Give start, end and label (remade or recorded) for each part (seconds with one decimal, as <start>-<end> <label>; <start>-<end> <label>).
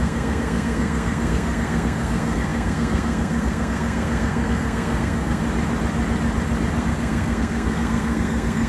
0.0-5.4 remade; 5.4-6.8 recorded; 6.8-8.7 remade